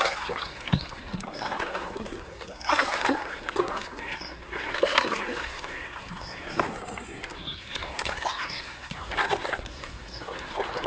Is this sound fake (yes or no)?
yes